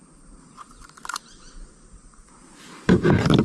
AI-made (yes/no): yes